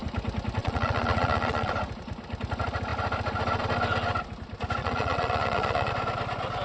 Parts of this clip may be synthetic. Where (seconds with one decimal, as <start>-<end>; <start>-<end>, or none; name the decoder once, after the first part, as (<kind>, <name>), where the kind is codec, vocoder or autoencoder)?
0.6-1.7 (vocoder, Vocos); 4.8-5.9